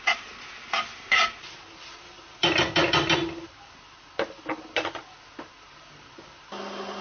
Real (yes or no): yes